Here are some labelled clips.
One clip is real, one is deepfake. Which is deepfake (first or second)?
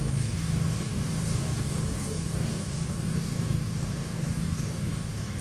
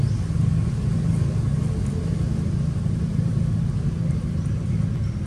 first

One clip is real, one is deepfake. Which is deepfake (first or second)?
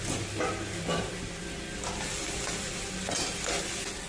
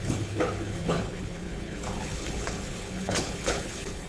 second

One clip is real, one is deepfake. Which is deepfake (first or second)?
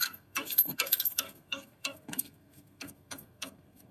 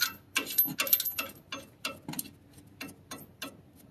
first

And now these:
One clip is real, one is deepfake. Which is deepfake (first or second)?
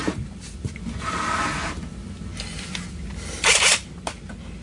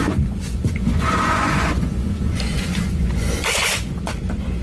second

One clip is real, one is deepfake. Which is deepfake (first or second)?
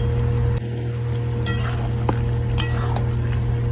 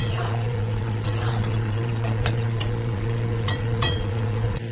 second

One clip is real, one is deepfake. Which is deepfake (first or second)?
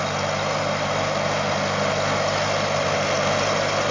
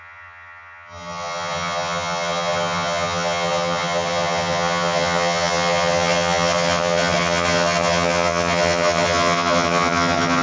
second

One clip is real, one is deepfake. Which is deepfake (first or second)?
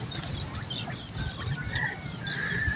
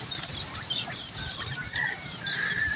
second